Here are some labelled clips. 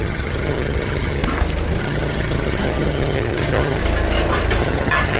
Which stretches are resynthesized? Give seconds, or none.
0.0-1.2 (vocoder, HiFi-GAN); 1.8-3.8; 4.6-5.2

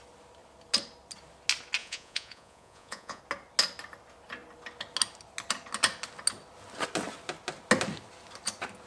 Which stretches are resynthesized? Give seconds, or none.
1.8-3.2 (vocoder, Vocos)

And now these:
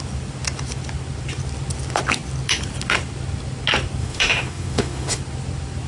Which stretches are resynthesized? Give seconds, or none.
4.0-5.2 (autoencoder, DAC-VAE)

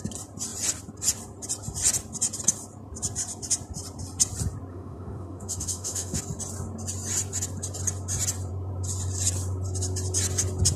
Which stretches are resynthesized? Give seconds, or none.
4.7-6.2 (autoencoder, DAC-VAE)